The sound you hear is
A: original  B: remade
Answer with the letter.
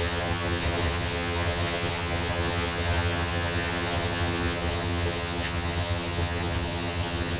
B